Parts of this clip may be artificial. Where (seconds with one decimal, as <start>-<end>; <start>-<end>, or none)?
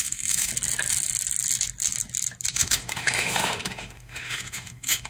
0.0-0.5; 2.5-5.1